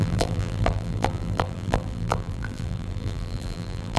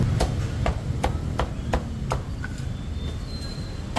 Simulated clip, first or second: first